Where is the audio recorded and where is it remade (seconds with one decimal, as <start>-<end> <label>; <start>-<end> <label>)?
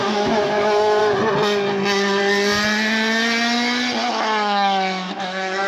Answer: 0.0-1.0 remade; 1.0-4.1 recorded; 4.1-5.7 remade